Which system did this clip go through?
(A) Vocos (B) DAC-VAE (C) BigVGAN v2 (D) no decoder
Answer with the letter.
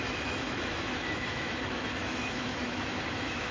B